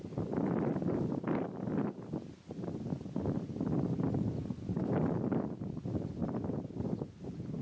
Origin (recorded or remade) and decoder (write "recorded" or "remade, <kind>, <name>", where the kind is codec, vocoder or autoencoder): recorded